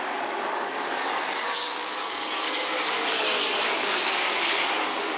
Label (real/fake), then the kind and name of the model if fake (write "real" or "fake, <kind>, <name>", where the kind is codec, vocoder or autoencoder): fake, codec, DAC